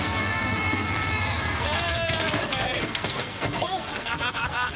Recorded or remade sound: remade